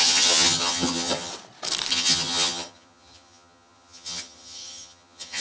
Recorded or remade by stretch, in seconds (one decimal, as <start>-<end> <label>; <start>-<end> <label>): 0.0-1.3 remade; 1.3-1.9 recorded; 1.9-5.4 remade